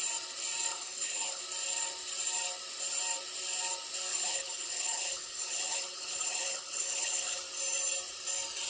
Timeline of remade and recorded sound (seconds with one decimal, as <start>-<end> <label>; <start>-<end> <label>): 0.0-0.7 recorded; 0.7-1.4 remade; 1.4-4.1 recorded; 4.1-7.4 remade; 7.4-8.7 recorded